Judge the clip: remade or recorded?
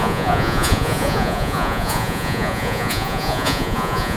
remade